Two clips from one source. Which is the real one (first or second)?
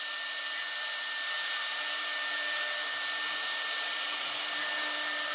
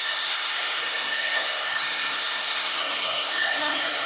first